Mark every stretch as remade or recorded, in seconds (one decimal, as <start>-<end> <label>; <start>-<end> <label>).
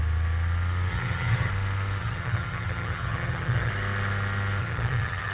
0.0-0.9 recorded; 0.9-1.5 remade; 1.5-2.0 recorded; 2.0-3.7 remade; 3.7-4.6 recorded; 4.6-5.3 remade